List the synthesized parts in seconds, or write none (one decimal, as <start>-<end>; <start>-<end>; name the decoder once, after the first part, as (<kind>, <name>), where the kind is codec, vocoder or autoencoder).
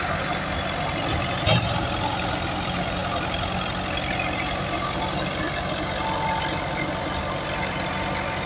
none